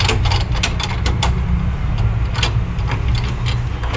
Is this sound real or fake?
real